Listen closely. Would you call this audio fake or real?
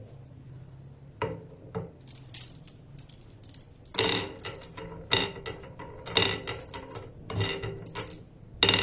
real